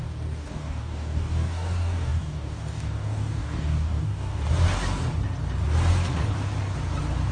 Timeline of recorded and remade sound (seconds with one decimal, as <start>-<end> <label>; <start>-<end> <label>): 0.0-4.4 remade; 4.4-7.3 recorded